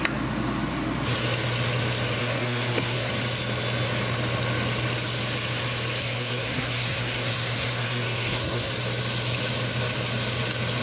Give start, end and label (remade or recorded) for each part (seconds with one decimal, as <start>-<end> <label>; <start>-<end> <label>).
0.0-2.2 recorded; 2.2-3.1 remade; 3.1-6.0 recorded; 6.0-8.7 remade; 8.7-10.8 recorded